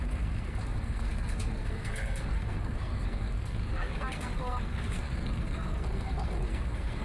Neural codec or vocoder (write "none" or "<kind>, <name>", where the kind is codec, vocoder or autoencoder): codec, SNAC